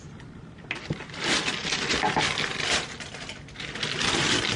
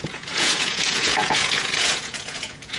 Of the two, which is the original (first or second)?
first